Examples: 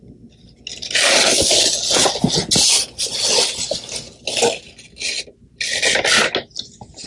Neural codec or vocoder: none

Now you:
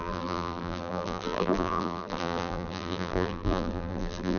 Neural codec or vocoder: vocoder, BigVGAN v2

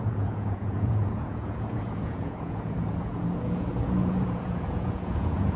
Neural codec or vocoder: vocoder, Vocos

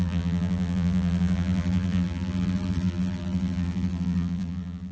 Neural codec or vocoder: vocoder, BigVGAN v2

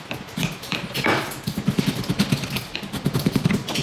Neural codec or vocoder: none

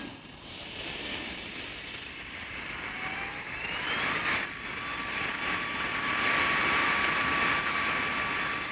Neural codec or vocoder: vocoder, BigVGAN v2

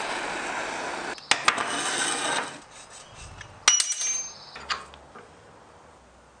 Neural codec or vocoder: none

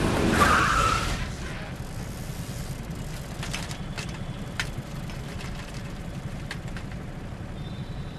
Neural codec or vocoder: none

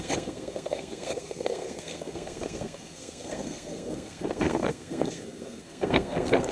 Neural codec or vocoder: codec, SNAC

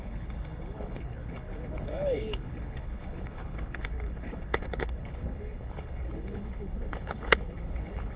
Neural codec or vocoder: codec, HILCodec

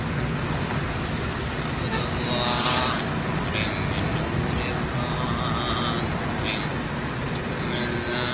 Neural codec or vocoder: none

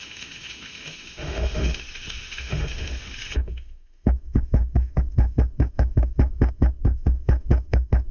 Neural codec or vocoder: autoencoder, DAC-VAE